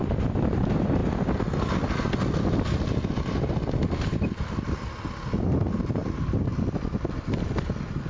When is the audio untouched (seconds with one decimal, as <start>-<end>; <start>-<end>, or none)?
0.0-8.1